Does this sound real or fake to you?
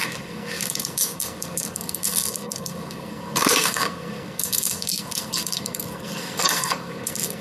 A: fake